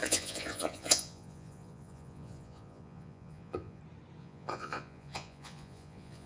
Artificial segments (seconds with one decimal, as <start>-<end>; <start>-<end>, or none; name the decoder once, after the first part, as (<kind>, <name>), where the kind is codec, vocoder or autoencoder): 0.0-3.8 (vocoder, Vocos); 4.2-6.3